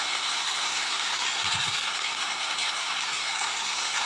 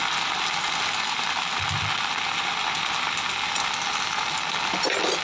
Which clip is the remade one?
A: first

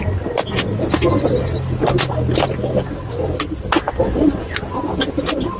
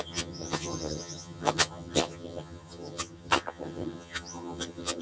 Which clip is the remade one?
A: second